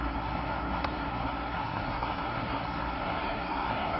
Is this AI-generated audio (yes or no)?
yes